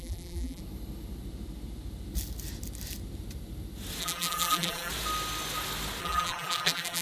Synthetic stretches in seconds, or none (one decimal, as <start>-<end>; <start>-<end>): 0.0-0.6; 4.0-4.9; 6.0-7.0

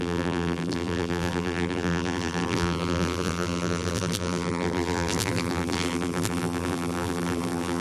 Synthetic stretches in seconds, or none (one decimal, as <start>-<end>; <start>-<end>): 0.0-7.8

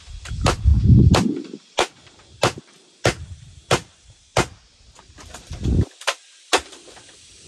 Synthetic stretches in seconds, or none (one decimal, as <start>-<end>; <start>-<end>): 0.0-0.7; 2.6-4.3; 5.0-7.5

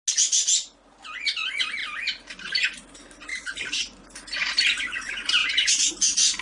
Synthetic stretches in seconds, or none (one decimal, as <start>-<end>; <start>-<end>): 3.3-4.0; 5.4-5.9

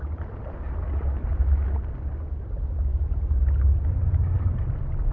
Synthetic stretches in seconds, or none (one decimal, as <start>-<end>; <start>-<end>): none

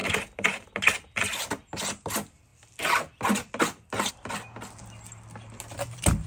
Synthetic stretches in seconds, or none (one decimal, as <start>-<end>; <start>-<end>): 0.0-0.9